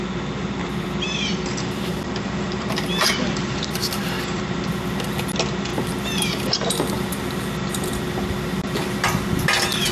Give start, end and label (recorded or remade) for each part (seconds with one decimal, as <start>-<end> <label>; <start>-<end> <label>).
0.0-0.4 recorded; 0.4-4.6 remade; 4.6-9.9 recorded